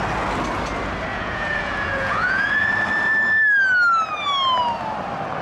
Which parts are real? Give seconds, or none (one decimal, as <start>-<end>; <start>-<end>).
0.0-1.1; 2.7-5.4